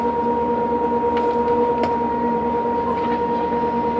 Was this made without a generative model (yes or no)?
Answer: yes